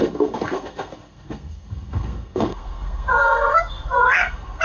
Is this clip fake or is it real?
fake